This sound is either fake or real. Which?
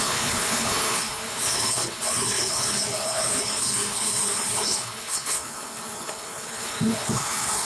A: fake